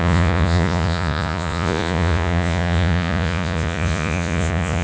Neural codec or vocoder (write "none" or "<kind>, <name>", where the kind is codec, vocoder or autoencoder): vocoder, Vocos